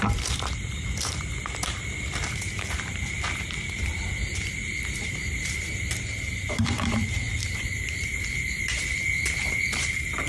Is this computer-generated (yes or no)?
yes